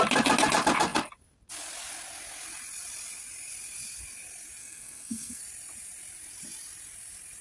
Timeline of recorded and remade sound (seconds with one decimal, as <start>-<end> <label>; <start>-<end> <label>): 0.0-4.6 recorded; 4.6-5.4 remade; 5.4-7.4 recorded